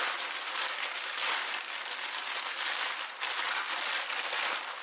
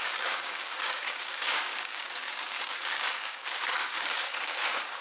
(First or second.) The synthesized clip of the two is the second